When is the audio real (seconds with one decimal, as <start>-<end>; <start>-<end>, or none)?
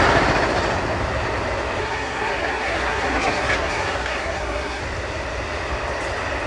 0.0-1.8; 4.8-6.5